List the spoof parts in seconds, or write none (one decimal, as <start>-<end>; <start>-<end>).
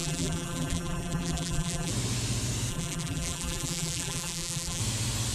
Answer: 0.0-1.9; 2.7-4.8